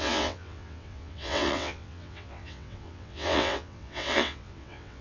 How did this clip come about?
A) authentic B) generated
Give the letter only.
B